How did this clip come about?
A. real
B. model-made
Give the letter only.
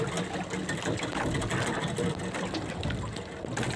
A